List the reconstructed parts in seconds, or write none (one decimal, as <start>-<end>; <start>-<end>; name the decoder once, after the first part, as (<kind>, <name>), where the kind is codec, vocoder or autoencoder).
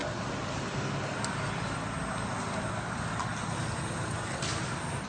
2.7-3.3 (vocoder, BigVGAN v2); 4.0-5.1